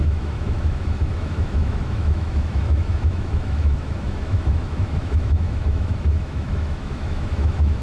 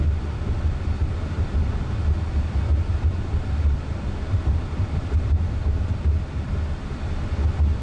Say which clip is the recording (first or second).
second